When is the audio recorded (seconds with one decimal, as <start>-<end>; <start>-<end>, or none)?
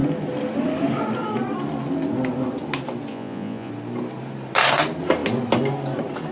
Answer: 0.0-3.1; 3.7-6.3